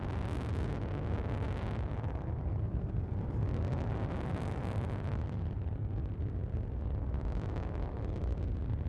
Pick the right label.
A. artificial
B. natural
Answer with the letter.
A